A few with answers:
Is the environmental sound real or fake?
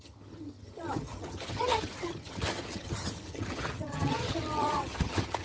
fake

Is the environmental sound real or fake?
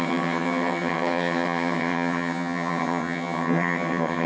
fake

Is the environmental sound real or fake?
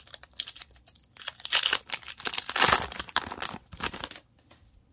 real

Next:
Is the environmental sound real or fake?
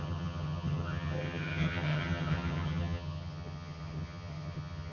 fake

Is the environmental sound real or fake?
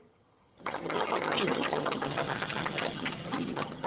fake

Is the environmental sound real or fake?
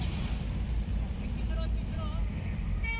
real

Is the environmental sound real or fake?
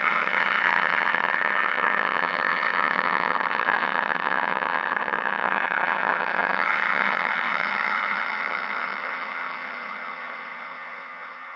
fake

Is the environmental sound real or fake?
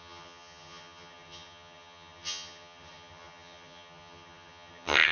fake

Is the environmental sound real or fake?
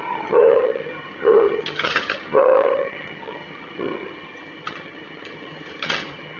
fake